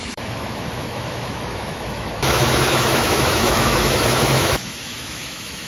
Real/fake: fake